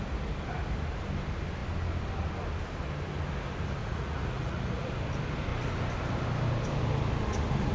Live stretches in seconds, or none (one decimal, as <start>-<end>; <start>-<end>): 0.0-3.8; 4.9-7.7